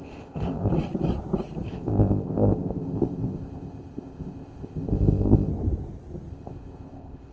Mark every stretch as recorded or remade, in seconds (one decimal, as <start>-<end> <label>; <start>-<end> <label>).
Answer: 0.0-0.7 remade; 0.7-1.7 recorded; 1.7-5.5 remade; 5.5-6.3 recorded; 6.3-7.3 remade